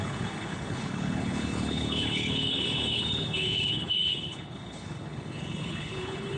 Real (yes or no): no